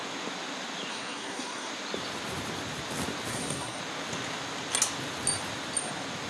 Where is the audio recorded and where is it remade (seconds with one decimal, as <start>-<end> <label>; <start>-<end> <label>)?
0.0-0.9 recorded; 0.9-1.7 remade; 1.7-3.3 recorded; 3.3-3.8 remade; 3.8-6.3 recorded